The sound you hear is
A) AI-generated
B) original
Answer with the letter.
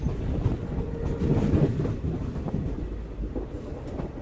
B